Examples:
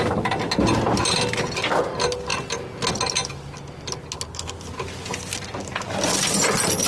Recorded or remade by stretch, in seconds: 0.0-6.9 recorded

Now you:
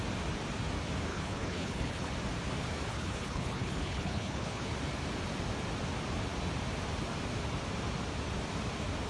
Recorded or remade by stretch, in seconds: 0.0-1.1 recorded; 1.1-2.1 remade; 2.1-2.9 recorded; 2.9-4.7 remade; 4.7-9.1 recorded

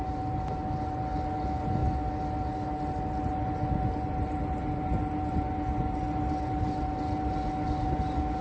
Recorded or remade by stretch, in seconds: 0.0-8.4 recorded

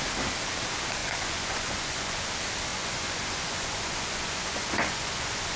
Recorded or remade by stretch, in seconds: 0.0-1.0 recorded; 1.0-2.3 remade; 2.3-2.7 recorded; 2.7-5.6 remade

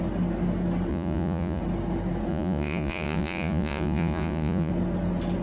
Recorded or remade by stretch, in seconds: 0.0-0.9 recorded; 0.9-1.6 remade; 1.6-2.3 recorded; 2.3-4.7 remade; 4.7-5.4 recorded

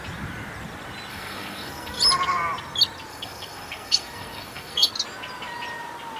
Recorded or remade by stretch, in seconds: 0.0-1.1 recorded; 1.1-2.0 remade; 2.0-3.1 recorded; 3.1-4.9 remade; 4.9-6.2 recorded

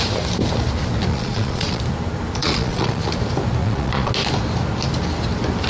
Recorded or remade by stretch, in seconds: 0.0-1.1 recorded; 1.1-1.8 remade; 1.8-2.4 recorded; 2.4-3.1 remade; 3.1-3.6 recorded; 3.6-4.1 remade; 4.1-5.7 recorded